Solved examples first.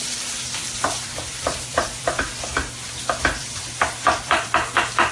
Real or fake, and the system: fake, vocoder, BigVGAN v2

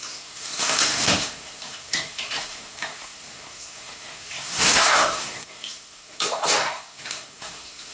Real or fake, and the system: fake, codec, SNAC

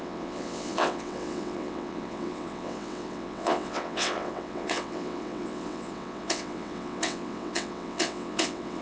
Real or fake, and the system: fake, vocoder, WaveNeXt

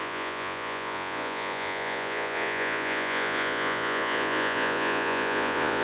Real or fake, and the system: fake, vocoder, Vocos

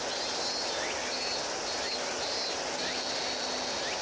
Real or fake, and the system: real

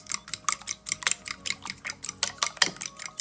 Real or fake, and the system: real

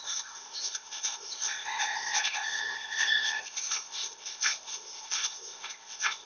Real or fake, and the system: fake, codec, ZipCodec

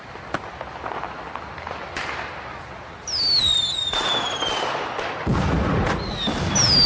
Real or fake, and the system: real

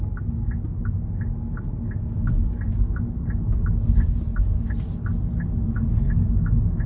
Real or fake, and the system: real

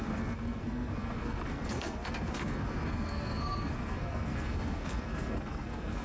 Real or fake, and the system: fake, codec, SNAC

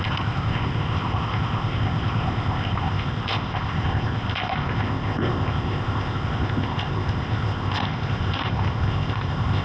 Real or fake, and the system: fake, codec, ZipCodec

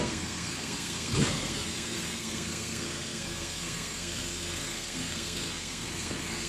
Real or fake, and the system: fake, codec, SNAC